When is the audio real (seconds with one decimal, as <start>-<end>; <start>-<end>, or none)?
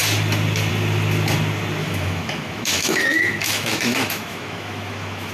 0.0-1.8